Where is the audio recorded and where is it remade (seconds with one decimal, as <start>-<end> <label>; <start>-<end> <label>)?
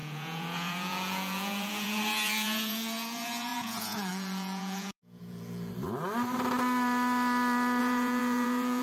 0.0-5.7 remade; 5.7-7.8 recorded; 7.8-8.8 remade